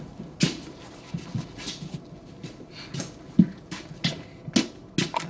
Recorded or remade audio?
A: recorded